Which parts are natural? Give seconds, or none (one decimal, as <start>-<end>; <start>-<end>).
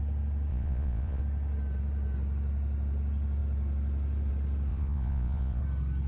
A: 0.0-0.5; 1.2-4.7; 5.6-6.1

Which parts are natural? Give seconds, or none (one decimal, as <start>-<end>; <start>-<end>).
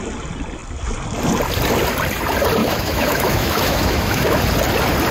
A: 0.0-2.6; 4.4-5.1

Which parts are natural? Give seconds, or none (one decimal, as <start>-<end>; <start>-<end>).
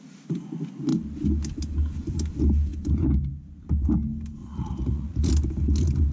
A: 0.0-4.4; 5.3-6.1